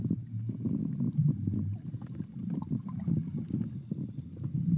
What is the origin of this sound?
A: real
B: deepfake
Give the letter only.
B